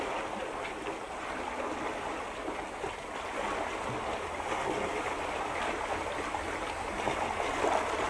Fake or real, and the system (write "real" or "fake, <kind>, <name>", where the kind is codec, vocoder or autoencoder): real